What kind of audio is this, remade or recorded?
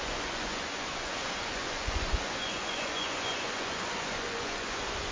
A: remade